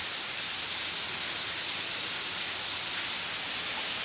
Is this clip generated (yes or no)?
no